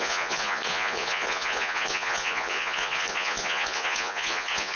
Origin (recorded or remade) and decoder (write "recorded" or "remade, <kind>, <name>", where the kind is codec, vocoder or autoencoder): remade, vocoder, Vocos